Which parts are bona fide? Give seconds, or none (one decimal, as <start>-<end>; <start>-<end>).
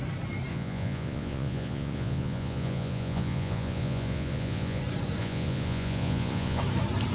0.0-0.5; 4.8-5.2; 6.6-7.1